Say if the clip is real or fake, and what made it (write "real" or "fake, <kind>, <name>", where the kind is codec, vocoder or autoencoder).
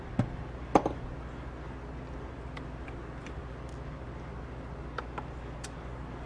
real